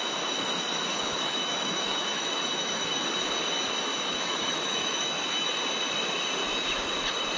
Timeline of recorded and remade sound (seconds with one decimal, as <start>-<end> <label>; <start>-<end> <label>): 0.0-0.9 recorded; 0.9-3.0 remade; 3.0-3.9 recorded; 3.9-5.5 remade; 5.5-6.4 recorded; 6.4-6.9 remade; 6.9-7.4 recorded